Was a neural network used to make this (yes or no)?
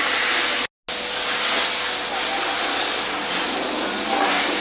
no